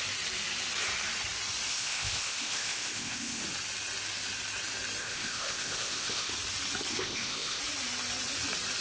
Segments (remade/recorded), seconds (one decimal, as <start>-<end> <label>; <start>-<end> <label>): 0.0-1.7 recorded; 1.7-3.4 remade; 3.4-5.0 recorded; 5.0-6.3 remade; 6.3-6.9 recorded; 6.9-7.6 remade; 7.6-8.8 recorded